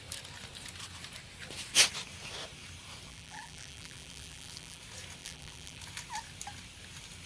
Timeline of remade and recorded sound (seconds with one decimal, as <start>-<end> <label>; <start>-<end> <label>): 0.0-3.1 recorded; 3.1-4.8 remade; 4.8-5.2 recorded; 5.2-5.8 remade; 5.8-7.3 recorded